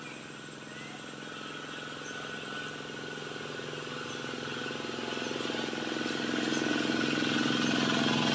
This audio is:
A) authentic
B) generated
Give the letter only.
A